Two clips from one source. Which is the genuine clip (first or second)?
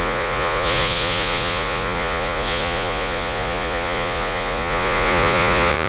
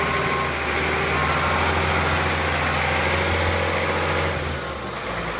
second